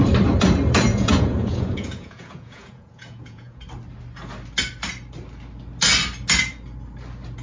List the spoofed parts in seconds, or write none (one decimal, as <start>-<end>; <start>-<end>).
0.9-3.6